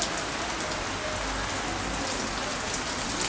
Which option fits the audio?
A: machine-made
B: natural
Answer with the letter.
B